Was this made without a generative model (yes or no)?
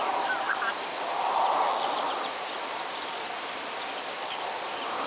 yes